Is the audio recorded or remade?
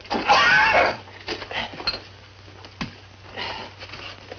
recorded